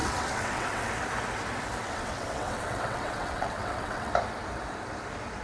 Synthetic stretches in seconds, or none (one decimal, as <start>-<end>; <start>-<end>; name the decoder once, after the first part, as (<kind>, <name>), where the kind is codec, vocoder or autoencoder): 0.0-0.9 (vocoder, WaveNeXt); 1.8-4.1